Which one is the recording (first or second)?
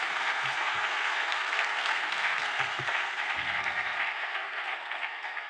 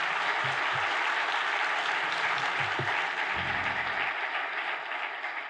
second